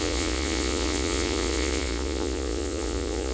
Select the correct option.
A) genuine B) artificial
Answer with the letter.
B